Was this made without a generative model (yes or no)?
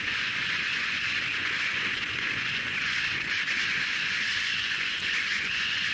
no